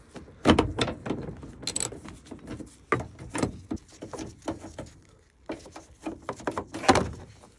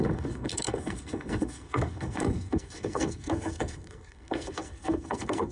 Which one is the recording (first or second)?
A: first